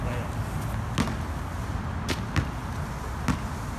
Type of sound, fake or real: real